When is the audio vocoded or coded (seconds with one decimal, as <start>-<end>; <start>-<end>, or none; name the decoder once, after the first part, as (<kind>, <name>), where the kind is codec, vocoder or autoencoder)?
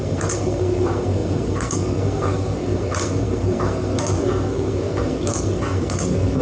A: 0.0-6.4 (codec, SNAC)